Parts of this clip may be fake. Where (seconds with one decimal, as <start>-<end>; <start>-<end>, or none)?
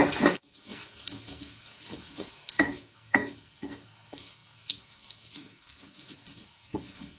0.0-7.2